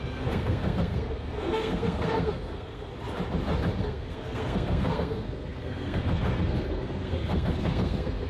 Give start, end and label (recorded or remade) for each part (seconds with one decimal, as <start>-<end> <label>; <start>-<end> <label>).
0.0-2.9 remade; 2.9-3.8 recorded; 3.8-8.3 remade